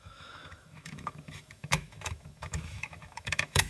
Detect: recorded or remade remade